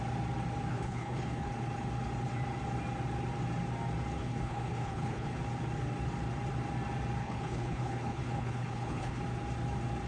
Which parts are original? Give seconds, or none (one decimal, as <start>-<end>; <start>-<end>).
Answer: 0.0-0.7; 1.5-4.2; 5.4-7.2; 9.2-10.1